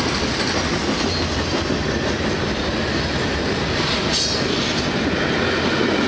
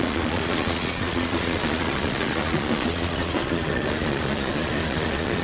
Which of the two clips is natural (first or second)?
first